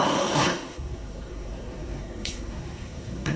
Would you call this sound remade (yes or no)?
yes